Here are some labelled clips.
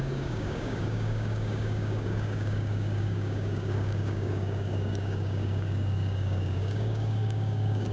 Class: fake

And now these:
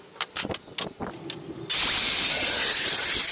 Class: real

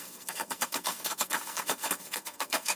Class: fake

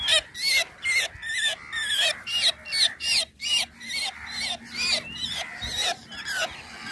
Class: real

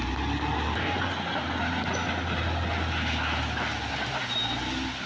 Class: real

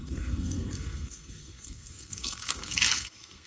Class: fake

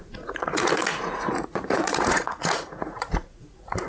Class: fake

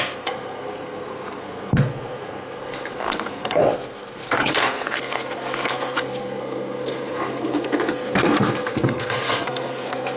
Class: fake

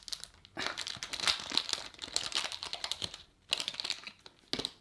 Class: real